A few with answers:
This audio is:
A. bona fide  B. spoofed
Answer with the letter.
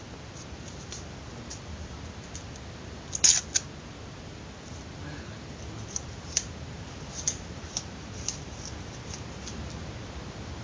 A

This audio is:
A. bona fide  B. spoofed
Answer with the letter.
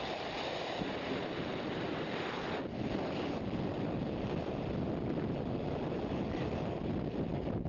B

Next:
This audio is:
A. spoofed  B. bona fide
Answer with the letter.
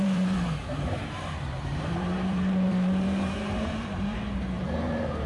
A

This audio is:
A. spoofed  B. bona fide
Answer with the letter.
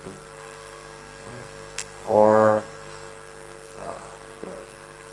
A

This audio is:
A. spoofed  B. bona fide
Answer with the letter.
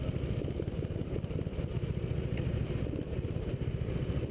B